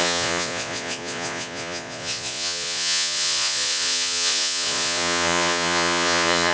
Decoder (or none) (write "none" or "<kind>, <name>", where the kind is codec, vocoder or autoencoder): vocoder, Vocos